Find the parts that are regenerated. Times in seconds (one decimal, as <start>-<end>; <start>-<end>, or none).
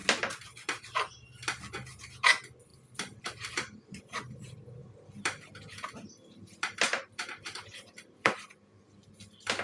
2.7-4.0; 4.8-9.0